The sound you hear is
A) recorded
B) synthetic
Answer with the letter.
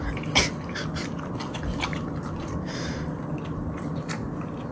A